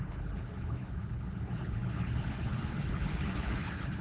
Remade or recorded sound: remade